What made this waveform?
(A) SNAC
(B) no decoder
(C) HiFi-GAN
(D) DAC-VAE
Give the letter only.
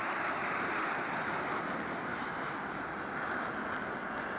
B